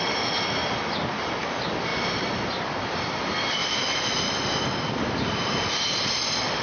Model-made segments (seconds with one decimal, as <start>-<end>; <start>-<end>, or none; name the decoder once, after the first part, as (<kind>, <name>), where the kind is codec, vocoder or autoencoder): none